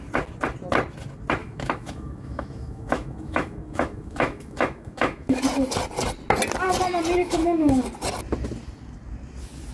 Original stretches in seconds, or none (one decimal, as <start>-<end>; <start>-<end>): 0.0-1.4; 5.4-7.2; 7.8-9.7